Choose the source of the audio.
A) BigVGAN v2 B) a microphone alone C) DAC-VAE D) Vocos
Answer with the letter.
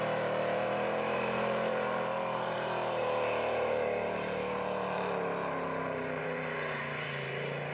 A